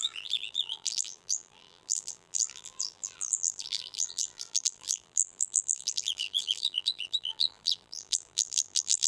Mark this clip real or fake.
fake